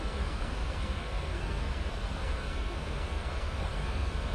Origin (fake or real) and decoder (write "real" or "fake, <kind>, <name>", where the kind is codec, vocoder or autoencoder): fake, codec, SNAC